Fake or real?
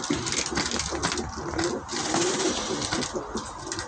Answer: real